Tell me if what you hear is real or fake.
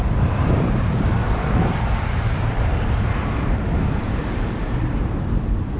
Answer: fake